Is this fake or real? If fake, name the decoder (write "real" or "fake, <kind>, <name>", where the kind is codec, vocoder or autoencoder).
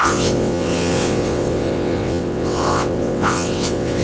fake, vocoder, WaveNeXt